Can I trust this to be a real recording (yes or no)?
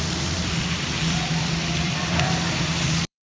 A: no